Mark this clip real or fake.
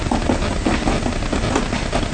real